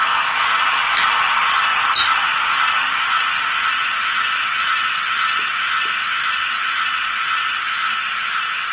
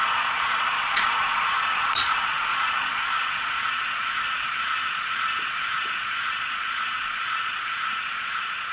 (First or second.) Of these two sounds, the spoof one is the second